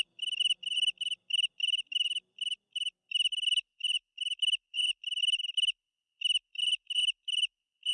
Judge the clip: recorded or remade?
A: recorded